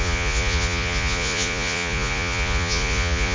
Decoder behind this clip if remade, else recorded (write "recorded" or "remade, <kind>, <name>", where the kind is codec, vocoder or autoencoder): remade, vocoder, Vocos